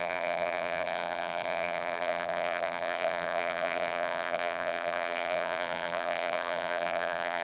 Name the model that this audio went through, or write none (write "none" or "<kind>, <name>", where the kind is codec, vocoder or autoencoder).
vocoder, BigVGAN v2